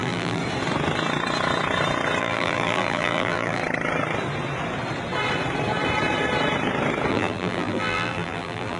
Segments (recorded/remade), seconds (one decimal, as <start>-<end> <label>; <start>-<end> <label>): 0.0-0.4 remade; 0.4-2.2 recorded; 2.2-3.6 remade; 3.6-7.1 recorded; 7.1-8.8 remade